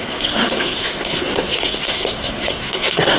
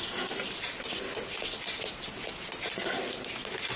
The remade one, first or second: first